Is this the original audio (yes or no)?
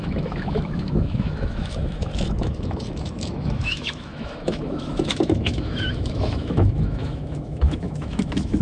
no